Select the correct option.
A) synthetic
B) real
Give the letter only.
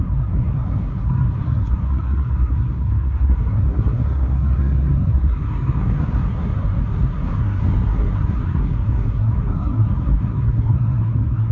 A